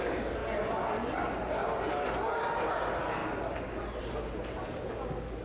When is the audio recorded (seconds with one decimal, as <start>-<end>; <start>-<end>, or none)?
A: 0.0-5.4